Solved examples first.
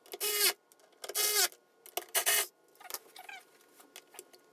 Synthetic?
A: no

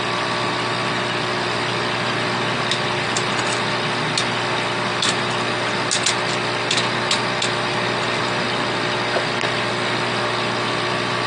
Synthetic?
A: no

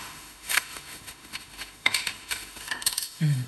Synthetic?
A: yes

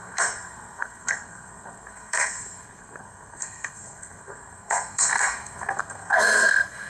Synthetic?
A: yes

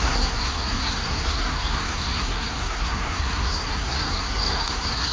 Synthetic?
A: yes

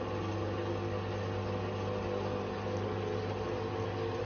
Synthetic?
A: no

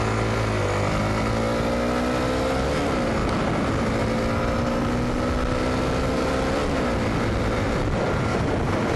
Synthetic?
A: no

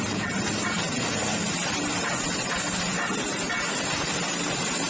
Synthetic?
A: no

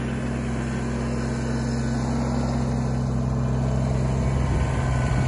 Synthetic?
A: no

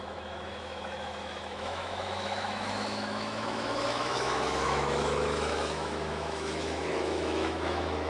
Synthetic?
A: yes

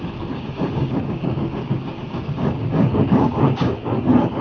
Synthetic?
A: yes